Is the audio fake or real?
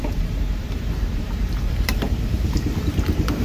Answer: fake